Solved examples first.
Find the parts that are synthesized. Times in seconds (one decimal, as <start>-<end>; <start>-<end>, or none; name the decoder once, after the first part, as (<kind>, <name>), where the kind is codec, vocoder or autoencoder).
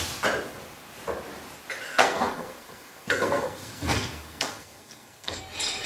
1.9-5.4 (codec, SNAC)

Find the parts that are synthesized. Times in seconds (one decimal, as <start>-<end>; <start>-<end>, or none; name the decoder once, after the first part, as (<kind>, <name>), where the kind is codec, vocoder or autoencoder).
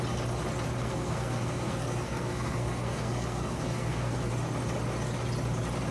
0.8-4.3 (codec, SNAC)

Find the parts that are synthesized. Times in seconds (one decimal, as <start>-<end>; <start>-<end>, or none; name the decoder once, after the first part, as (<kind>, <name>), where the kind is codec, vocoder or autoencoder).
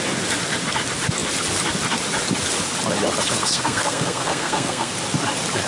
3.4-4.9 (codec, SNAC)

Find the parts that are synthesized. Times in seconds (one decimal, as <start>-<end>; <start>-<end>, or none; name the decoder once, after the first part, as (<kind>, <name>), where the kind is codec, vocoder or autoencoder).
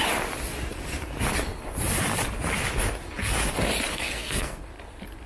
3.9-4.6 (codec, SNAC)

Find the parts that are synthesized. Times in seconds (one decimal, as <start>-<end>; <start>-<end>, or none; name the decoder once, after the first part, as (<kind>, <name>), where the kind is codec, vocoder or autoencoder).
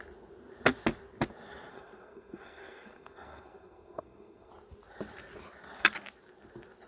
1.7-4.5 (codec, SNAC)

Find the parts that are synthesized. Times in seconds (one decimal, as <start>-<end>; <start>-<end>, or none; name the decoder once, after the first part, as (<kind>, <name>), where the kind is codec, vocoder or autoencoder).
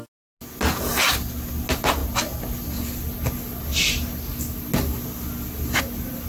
none